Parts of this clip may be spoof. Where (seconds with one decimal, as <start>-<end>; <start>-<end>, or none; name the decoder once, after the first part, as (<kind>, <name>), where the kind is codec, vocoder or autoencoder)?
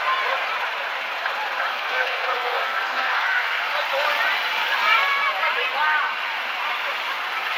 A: 1.7-3.6 (codec, SNAC)